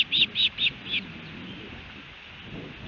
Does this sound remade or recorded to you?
recorded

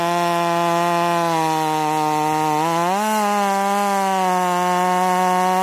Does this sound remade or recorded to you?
recorded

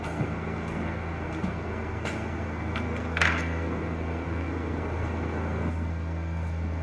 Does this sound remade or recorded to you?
remade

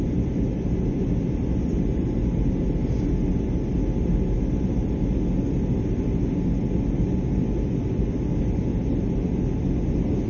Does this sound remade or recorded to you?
recorded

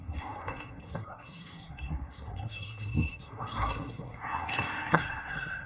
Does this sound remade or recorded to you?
remade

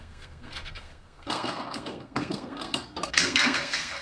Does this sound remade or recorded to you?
remade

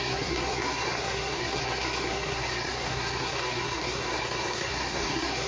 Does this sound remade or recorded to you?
remade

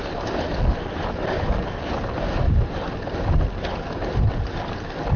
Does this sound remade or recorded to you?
recorded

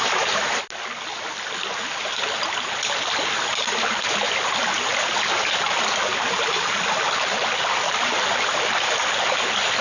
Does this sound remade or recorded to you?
recorded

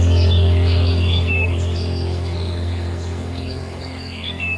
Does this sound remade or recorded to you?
remade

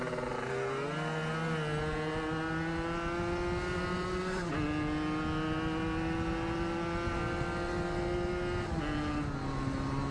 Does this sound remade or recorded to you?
recorded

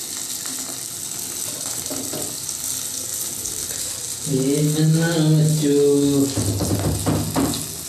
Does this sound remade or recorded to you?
recorded